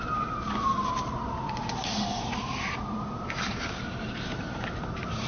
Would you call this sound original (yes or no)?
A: no